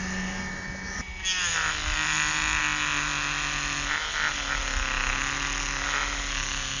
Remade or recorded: recorded